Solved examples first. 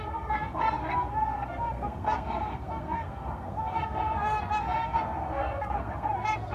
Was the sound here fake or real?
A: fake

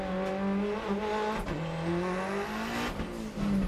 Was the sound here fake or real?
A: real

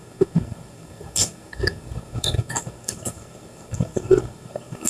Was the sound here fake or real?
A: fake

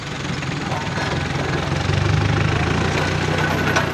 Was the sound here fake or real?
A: real